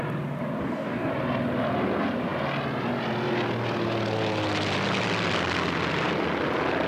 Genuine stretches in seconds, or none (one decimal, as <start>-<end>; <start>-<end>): 0.0-0.6; 1.1-6.9